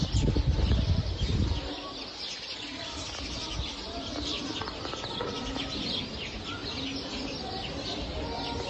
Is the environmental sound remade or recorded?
recorded